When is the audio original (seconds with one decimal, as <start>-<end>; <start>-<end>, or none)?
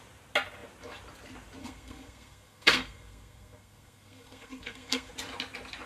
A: 0.0-1.6; 5.1-5.9